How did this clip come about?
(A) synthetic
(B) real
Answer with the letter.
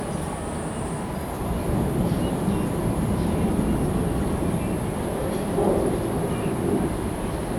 B